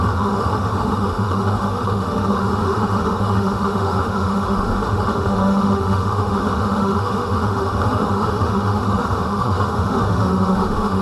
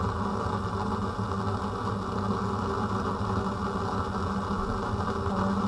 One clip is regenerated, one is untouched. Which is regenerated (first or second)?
first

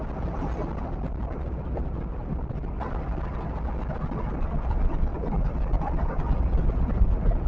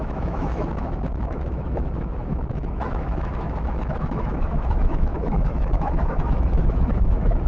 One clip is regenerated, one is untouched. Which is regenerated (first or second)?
second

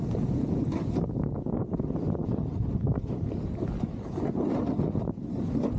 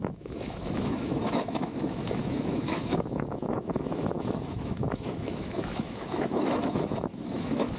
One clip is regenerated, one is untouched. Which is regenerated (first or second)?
second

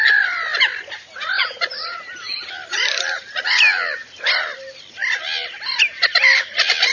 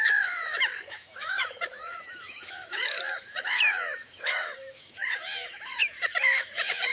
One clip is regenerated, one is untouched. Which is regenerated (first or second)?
second